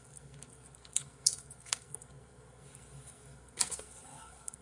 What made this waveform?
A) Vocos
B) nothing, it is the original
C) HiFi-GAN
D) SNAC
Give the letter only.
D